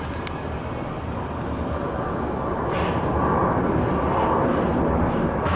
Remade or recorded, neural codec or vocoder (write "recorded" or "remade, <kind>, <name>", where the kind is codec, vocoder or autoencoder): recorded